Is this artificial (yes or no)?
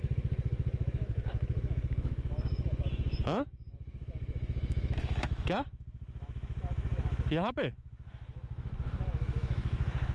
yes